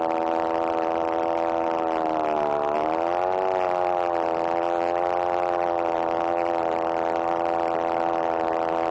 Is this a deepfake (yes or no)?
no